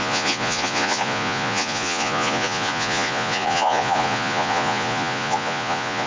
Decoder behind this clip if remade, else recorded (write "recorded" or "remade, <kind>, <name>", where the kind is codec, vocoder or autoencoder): remade, vocoder, Vocos